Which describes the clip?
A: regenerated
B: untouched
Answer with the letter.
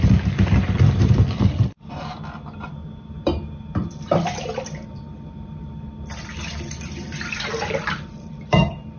A